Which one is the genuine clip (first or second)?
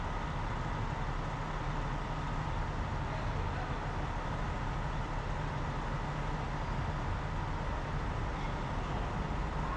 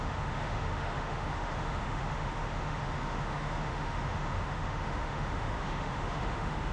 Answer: first